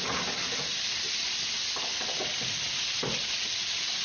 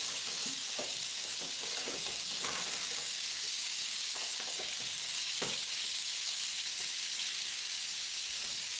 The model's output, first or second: second